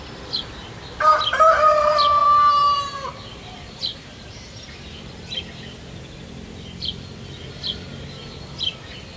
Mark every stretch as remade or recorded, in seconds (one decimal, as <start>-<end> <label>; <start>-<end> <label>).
0.0-2.2 recorded; 2.2-4.6 remade; 4.6-9.2 recorded